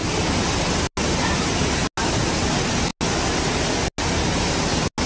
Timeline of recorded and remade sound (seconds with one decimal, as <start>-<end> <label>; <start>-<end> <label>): 0.0-5.1 recorded